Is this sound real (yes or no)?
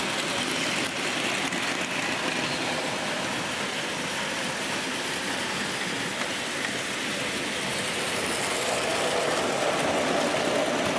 yes